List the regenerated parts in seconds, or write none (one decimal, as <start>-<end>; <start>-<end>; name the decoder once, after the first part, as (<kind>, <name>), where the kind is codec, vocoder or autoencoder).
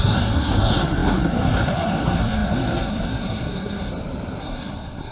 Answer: 0.0-3.9 (codec, SNAC); 4.4-5.1